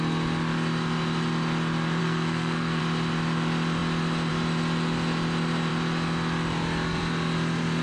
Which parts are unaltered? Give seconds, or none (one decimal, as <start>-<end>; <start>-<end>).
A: 0.0-2.0; 2.8-7.8